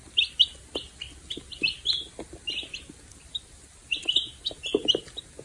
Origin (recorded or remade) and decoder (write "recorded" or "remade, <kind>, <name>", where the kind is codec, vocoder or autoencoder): recorded